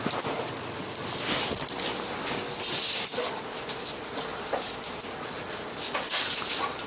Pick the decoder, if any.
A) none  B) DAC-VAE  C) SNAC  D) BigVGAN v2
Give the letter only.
A